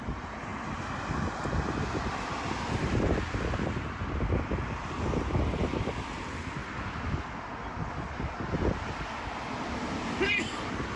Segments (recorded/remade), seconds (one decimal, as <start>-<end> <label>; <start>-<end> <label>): 0.0-11.0 recorded